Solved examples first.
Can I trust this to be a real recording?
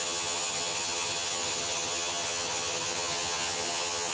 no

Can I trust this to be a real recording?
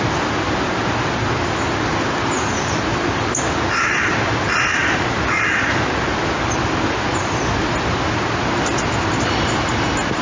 yes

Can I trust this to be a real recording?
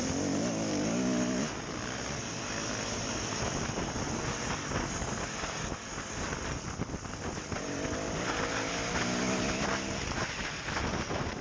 yes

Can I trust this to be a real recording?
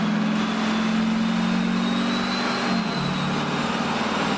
yes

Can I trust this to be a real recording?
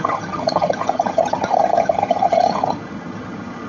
no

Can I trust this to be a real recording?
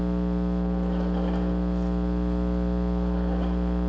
yes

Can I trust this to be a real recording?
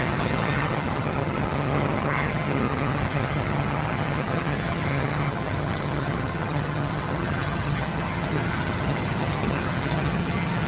no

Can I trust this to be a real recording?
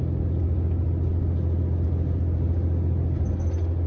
yes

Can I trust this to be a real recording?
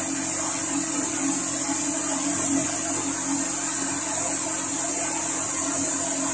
yes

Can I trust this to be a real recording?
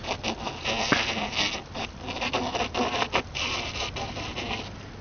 yes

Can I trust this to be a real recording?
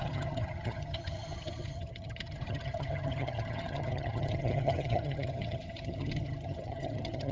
no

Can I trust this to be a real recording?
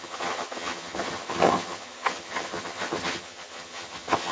no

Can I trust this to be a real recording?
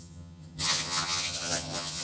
no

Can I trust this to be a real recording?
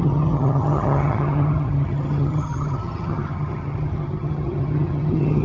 no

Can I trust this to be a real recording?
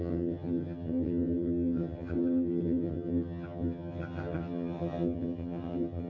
no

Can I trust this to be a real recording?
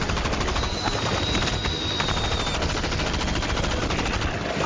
yes